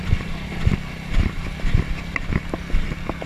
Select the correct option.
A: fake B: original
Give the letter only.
B